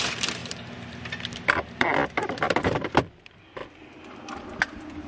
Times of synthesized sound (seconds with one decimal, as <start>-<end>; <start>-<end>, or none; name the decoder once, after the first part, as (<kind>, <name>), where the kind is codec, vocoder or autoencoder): 0.0-2.0 (vocoder, BigVGAN v2); 2.9-5.1